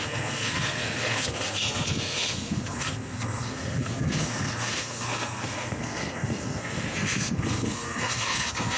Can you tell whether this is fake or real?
fake